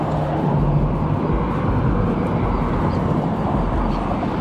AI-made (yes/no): no